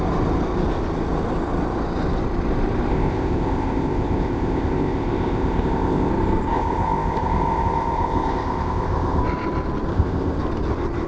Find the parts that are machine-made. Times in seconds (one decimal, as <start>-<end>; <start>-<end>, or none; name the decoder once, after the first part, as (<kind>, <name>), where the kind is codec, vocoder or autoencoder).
2.9-6.1 (codec, ZipCodec); 6.5-9.2; 9.9-10.4